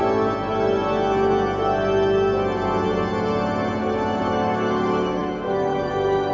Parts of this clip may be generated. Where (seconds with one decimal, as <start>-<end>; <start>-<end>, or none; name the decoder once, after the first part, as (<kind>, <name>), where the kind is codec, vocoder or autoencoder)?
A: 3.8-6.3 (autoencoder, DAC-VAE)